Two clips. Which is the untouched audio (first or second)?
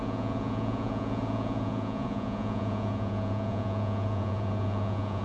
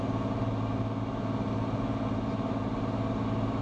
second